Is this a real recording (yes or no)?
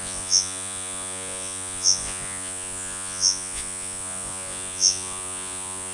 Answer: no